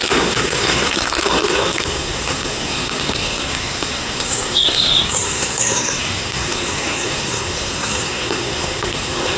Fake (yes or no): yes